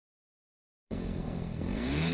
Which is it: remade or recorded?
remade